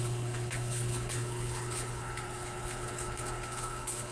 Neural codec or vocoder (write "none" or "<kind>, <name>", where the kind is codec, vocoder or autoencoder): codec, HILCodec